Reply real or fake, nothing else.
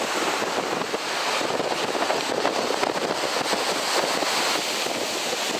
real